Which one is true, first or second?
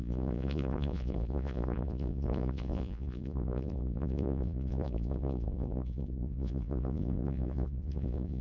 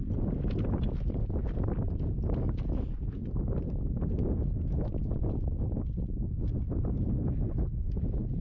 second